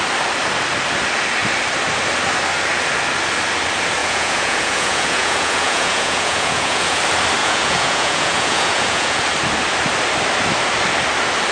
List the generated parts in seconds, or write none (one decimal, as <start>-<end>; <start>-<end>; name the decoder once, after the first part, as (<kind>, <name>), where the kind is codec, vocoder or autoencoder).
4.0-7.0 (vocoder, Vocos); 7.4-9.2